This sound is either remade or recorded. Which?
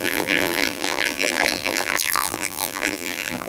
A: remade